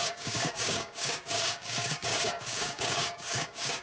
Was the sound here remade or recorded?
remade